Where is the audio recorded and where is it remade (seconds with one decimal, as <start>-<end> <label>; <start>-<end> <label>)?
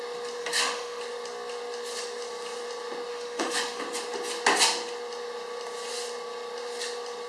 0.0-0.4 recorded; 0.4-1.0 remade; 1.0-3.1 recorded; 3.1-3.8 remade; 3.8-7.3 recorded